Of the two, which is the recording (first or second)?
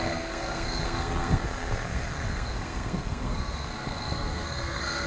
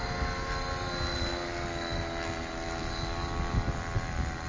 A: second